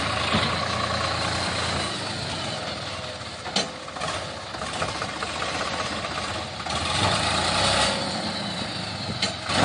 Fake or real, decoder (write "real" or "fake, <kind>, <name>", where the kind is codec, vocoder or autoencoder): real